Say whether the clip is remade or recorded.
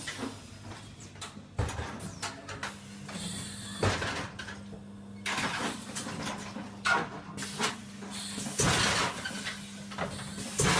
recorded